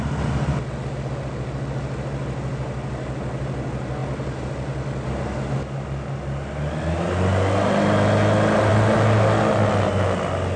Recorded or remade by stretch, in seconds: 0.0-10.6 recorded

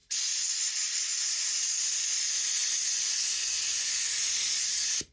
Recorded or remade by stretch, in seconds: 0.0-2.6 recorded; 2.6-4.6 remade; 4.6-5.1 recorded

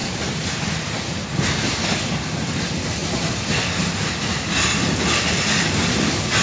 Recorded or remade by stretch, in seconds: 0.0-6.4 recorded